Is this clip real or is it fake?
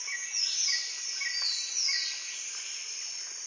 real